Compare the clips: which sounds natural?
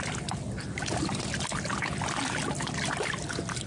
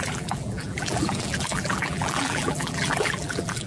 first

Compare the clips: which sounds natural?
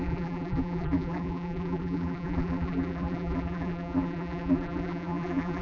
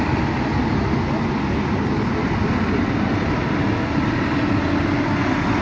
second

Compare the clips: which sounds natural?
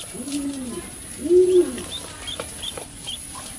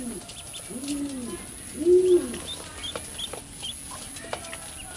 second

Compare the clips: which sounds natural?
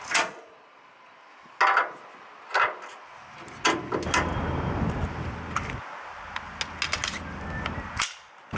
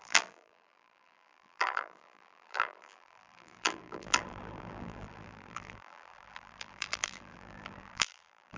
first